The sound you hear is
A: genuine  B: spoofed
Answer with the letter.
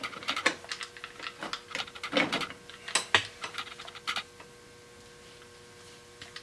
A